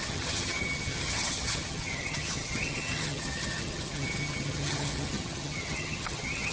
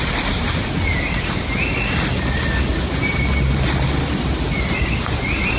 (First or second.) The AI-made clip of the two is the first